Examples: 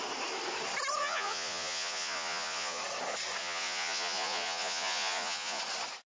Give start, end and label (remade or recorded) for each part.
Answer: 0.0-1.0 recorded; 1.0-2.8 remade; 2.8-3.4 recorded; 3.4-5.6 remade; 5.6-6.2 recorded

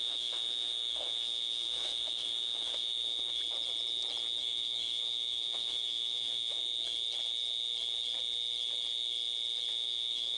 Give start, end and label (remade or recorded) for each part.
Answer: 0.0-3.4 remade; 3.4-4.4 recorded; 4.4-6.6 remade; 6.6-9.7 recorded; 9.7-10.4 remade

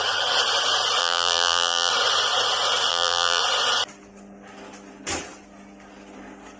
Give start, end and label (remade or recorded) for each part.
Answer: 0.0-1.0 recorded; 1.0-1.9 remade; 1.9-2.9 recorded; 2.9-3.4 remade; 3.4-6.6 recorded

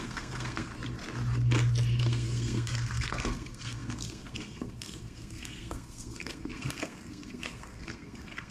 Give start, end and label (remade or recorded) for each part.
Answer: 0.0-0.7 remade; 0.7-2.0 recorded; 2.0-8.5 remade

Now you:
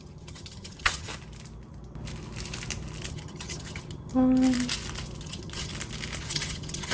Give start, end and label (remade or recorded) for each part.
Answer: 0.0-1.1 remade; 1.1-3.1 recorded; 3.1-4.1 remade; 4.1-5.2 recorded; 5.2-5.7 remade; 5.7-6.2 recorded; 6.2-6.9 remade

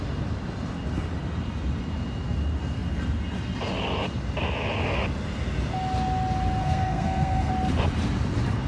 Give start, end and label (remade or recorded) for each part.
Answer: 0.0-6.6 recorded; 6.6-7.5 remade; 7.5-8.7 recorded

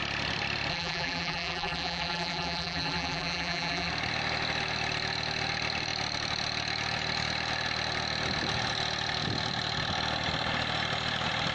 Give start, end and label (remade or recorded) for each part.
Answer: 0.0-0.7 recorded; 0.7-3.9 remade; 3.9-11.5 recorded

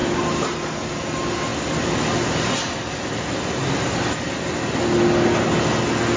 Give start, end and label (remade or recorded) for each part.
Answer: 0.0-6.2 recorded